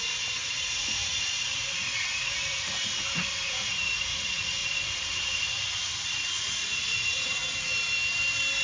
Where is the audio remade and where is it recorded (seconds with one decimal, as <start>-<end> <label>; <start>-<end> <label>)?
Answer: 0.0-7.4 remade; 7.4-8.6 recorded